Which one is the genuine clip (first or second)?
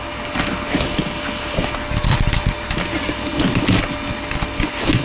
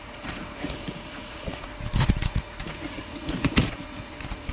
first